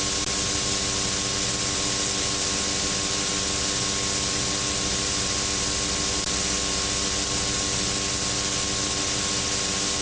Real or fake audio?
real